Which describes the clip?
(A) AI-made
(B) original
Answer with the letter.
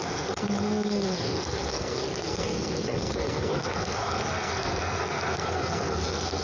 A